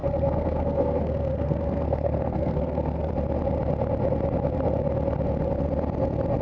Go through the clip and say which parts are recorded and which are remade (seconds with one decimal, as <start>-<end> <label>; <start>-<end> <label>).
0.0-3.1 remade; 3.1-6.4 recorded